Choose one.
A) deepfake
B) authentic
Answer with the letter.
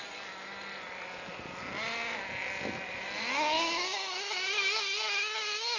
B